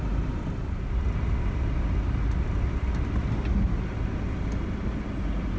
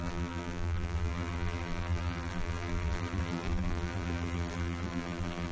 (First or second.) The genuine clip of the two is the first